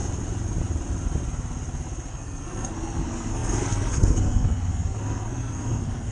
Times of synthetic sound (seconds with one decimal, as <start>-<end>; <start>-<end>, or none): 2.1-6.1